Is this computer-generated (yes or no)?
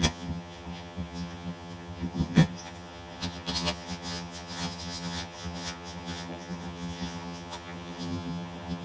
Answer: yes